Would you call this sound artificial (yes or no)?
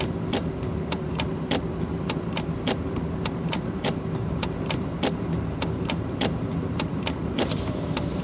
yes